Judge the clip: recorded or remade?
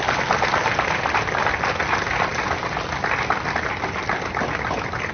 recorded